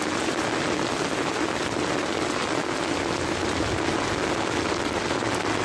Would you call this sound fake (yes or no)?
no